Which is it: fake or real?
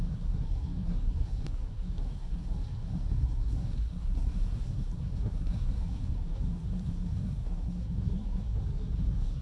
fake